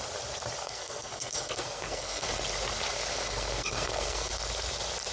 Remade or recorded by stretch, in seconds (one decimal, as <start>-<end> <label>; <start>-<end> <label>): 0.0-0.6 recorded; 0.6-2.3 remade; 2.3-3.1 recorded; 3.1-4.3 remade; 4.3-5.1 recorded